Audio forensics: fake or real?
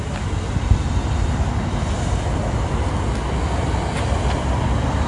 real